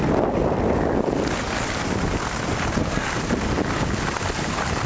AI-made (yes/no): no